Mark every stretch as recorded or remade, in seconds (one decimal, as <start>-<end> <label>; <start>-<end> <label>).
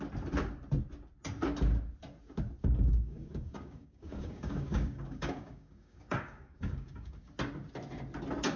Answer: 0.0-2.6 recorded; 2.6-7.3 remade; 7.3-8.6 recorded